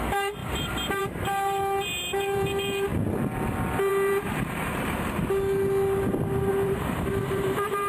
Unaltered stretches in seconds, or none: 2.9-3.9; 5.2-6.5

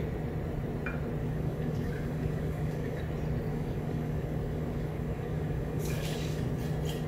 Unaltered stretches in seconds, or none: 0.0-1.2; 3.0-3.5; 6.4-7.1